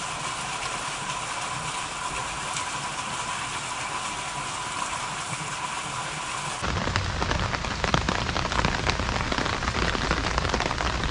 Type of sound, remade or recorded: recorded